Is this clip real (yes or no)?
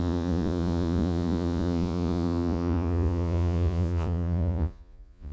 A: no